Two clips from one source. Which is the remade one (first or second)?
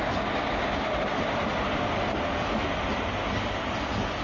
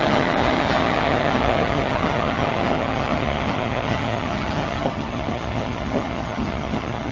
second